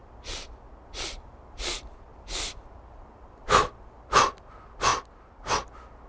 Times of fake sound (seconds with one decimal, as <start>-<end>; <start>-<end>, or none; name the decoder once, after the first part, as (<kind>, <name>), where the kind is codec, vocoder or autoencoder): none